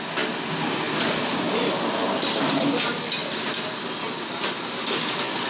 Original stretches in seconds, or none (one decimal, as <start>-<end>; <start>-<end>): 0.0-5.5